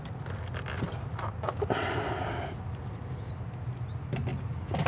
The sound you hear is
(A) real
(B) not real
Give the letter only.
A